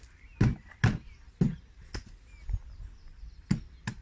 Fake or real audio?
real